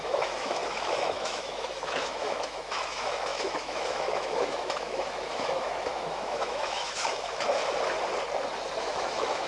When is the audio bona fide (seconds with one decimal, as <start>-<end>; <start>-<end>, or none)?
7.6-8.8